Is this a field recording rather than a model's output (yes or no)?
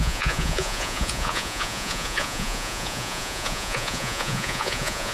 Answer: no